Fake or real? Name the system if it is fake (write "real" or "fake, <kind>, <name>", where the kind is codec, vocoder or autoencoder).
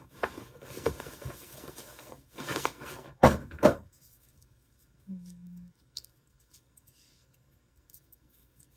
fake, codec, SNAC